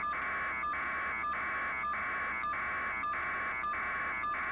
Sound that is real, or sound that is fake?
real